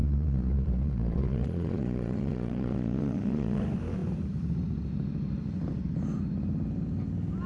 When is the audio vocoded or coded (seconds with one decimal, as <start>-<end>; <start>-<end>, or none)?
0.0-3.6